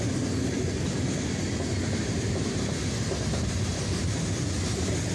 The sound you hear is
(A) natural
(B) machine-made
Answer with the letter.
A